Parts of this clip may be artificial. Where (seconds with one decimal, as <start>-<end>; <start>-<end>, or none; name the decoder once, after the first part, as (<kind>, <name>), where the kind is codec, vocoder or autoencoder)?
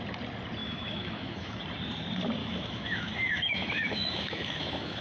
0.6-1.6 (autoencoder, DAC-VAE); 2.4-5.0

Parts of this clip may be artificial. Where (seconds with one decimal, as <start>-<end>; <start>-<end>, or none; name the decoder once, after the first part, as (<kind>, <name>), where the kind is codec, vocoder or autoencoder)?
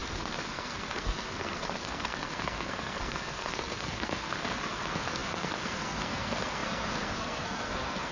0.0-8.1 (codec, SNAC)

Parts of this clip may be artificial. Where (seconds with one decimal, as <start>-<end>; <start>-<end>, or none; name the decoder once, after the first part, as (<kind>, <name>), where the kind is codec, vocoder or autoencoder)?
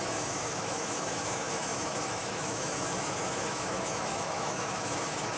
0.0-5.4 (autoencoder, DAC-VAE)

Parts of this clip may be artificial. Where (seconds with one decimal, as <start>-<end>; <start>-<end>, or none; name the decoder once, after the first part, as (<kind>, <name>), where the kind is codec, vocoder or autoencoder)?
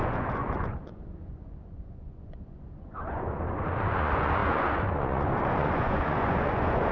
0.0-6.9 (vocoder, Vocos)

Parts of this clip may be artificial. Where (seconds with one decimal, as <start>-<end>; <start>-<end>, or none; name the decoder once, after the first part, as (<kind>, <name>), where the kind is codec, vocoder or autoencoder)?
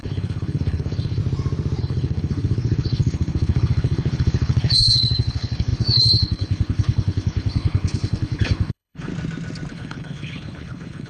0.0-1.2 (codec, HILCodec); 1.8-9.1; 9.7-11.1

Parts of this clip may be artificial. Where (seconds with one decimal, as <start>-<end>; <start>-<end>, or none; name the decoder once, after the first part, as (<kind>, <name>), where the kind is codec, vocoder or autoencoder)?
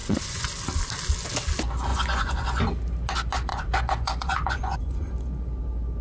0.0-0.5 (vocoder, Vocos); 1.9-2.6; 3.5-5.1